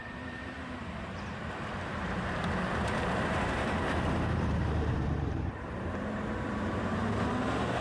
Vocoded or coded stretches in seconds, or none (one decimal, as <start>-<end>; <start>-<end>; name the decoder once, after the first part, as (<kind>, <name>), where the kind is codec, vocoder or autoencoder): 0.0-1.5 (vocoder, BigVGAN v2); 1.9-6.5